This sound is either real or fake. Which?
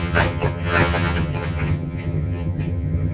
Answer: fake